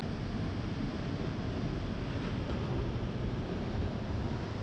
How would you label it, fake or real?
real